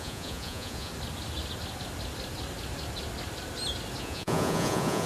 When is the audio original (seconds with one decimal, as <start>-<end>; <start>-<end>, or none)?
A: 0.9-4.0